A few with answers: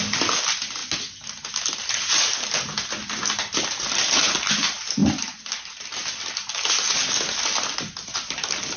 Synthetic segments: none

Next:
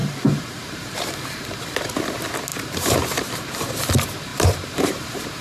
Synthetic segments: 0.0-2.0; 2.5-3.7; 4.3-5.4

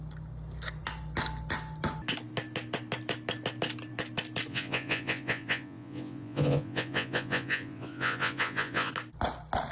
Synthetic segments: 4.5-8.9

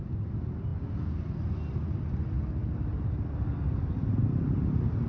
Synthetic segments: none

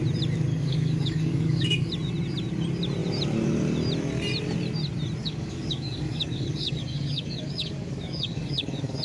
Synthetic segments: 0.5-1.9; 5.2-9.0

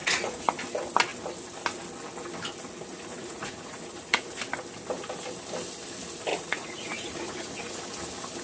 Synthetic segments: 0.0-0.6; 2.9-4.4; 6.3-7.8